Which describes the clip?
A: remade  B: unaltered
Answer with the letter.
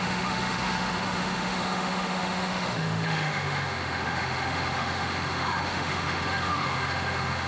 A